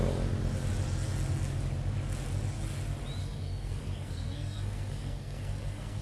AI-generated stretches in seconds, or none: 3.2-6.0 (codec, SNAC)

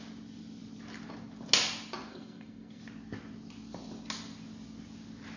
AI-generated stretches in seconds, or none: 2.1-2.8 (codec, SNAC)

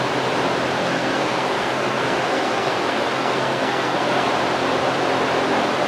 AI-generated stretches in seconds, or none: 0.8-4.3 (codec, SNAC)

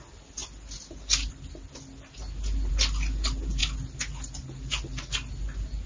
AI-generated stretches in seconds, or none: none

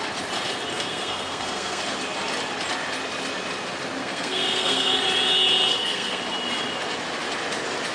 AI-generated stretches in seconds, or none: 0.7-1.8 (codec, SNAC); 4.0-5.0; 5.7-6.2